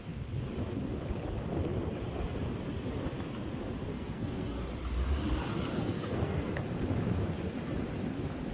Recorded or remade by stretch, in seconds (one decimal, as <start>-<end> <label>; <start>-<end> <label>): 0.0-3.9 recorded; 3.9-4.6 remade; 4.6-5.7 recorded; 5.7-6.5 remade; 6.5-8.5 recorded